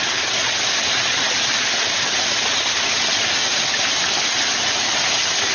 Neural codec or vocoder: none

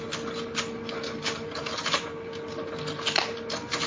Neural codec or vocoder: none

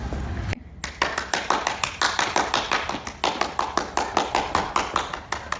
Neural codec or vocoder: none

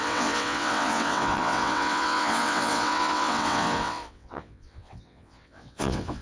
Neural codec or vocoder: vocoder, WaveNeXt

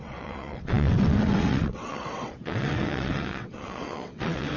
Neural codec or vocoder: vocoder, WaveNeXt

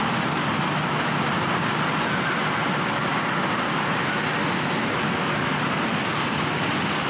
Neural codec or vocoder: none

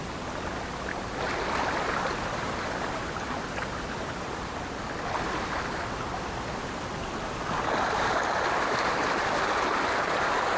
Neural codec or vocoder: none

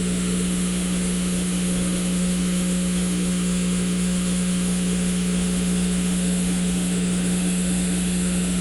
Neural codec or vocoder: autoencoder, DAC-VAE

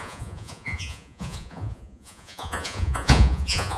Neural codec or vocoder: vocoder, Vocos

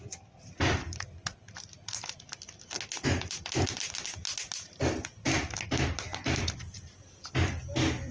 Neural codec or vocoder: none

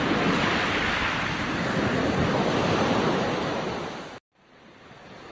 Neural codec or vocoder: none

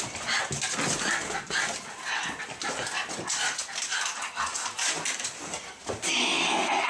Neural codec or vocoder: none